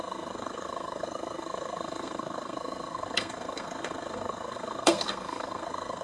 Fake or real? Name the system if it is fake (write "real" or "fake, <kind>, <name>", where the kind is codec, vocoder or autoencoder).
fake, codec, SNAC